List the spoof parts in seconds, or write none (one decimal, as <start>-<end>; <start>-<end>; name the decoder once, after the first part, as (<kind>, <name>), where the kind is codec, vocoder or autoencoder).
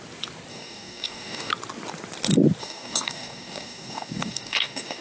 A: 0.5-1.5 (codec, DAC); 2.6-5.0